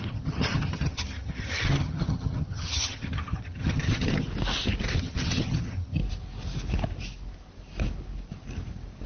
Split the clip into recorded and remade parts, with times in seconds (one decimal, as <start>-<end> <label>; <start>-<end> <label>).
0.0-4.3 remade; 4.3-5.0 recorded; 5.0-6.0 remade; 6.0-9.1 recorded